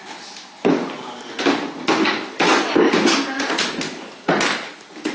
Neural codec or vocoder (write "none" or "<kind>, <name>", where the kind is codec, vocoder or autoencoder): none